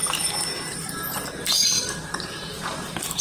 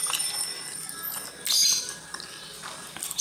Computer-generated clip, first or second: first